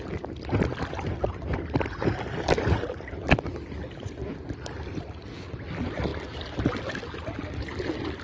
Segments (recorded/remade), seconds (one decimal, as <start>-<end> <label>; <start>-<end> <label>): 0.0-8.2 recorded